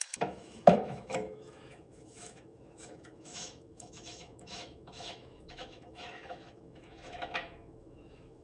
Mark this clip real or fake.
fake